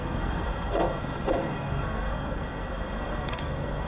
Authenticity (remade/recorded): remade